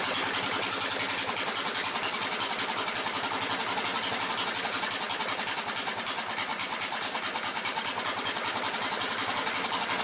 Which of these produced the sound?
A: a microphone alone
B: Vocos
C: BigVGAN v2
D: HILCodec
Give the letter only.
A